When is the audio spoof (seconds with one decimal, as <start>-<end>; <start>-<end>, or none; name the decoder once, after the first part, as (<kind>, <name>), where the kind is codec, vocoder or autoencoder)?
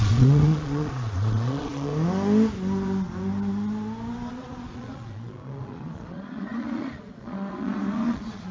0.0-1.9 (vocoder, Vocos); 4.3-8.5